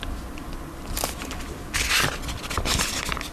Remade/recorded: recorded